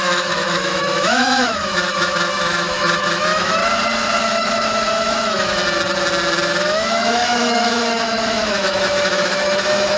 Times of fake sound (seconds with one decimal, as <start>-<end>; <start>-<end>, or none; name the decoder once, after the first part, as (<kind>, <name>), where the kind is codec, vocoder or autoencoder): 0.0-3.6 (autoencoder, DAC-VAE); 4.2-5.6; 6.4-10.0